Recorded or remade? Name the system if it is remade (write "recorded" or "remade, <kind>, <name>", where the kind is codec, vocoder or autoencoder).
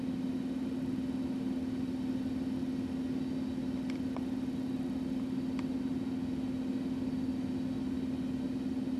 recorded